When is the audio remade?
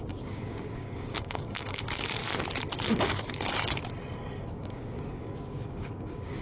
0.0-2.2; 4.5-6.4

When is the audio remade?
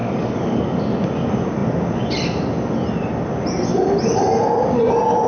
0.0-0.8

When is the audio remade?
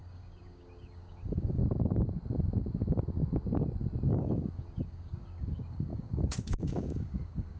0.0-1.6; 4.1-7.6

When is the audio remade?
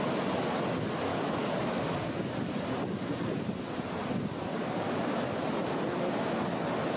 1.1-1.6; 4.5-5.2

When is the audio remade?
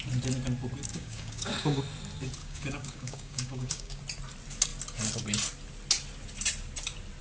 0.9-1.8; 2.4-4.0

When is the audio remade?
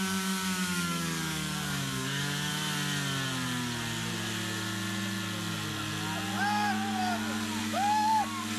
0.0-2.5; 7.6-8.6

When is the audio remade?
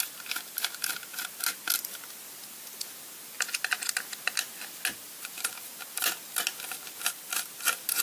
none